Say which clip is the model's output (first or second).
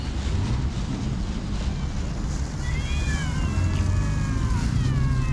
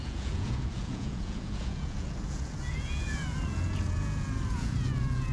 second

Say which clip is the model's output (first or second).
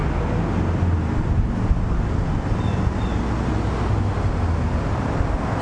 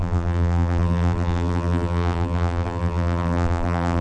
second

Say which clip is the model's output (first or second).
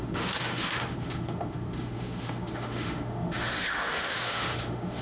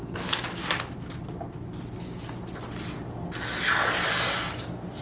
first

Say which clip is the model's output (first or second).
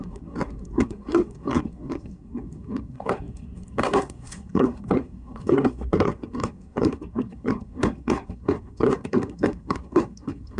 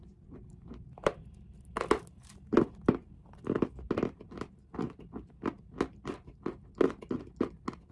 first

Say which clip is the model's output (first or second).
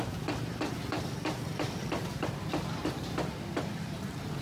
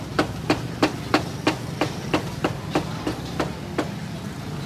first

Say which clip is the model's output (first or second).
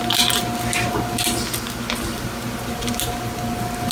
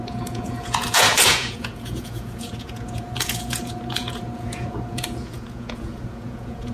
second